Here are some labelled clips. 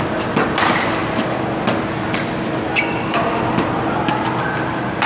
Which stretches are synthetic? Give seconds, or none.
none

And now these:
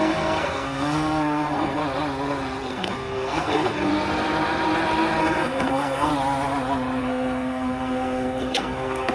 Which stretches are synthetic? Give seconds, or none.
0.0-1.8 (codec, SNAC); 2.7-3.9; 5.2-6.1; 7.0-9.1

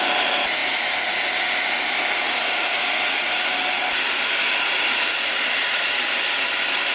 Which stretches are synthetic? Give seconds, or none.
none

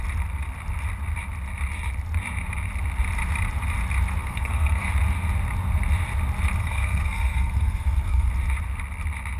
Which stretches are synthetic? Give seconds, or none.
4.2-4.9 (codec, SNAC); 6.6-8.3